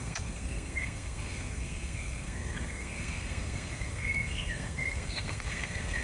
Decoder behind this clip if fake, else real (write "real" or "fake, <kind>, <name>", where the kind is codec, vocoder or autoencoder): fake, codec, SNAC